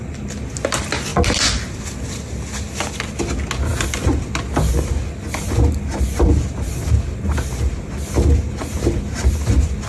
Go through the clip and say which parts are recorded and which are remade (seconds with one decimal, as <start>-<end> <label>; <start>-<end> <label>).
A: 0.0-9.9 recorded